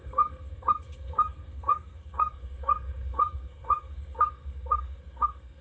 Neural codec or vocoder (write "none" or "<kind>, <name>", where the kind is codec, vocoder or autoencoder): codec, SNAC